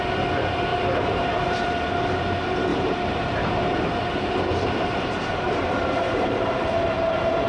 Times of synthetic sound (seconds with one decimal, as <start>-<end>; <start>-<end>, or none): 0.7-1.8; 2.7-7.5

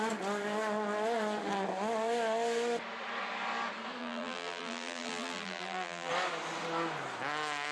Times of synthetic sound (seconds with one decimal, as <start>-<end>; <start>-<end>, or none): 4.0-6.1